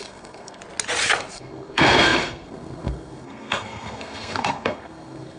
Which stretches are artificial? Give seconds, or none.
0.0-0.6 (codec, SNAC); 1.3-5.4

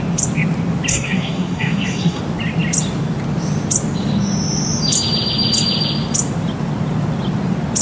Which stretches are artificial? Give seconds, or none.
0.9-2.2 (codec, SNAC)

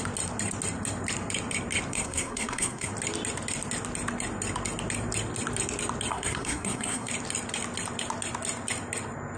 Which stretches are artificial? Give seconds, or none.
1.9-2.9 (codec, SNAC); 6.1-7.1